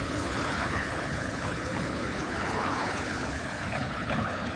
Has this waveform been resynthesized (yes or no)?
yes